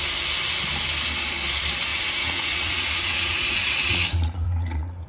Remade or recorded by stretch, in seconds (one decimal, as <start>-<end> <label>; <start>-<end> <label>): 0.0-1.9 recorded; 1.9-5.1 remade